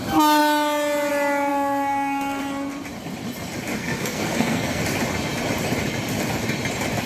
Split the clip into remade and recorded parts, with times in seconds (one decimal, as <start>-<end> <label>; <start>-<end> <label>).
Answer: 0.0-1.5 recorded; 1.5-2.4 remade; 2.4-3.7 recorded; 3.7-4.8 remade; 4.8-7.1 recorded